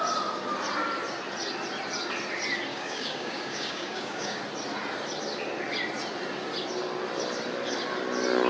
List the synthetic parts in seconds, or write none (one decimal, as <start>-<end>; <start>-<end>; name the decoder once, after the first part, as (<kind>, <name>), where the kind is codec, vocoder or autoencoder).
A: 2.7-4.4 (codec, DAC)